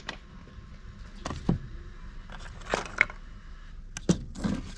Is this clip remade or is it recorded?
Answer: recorded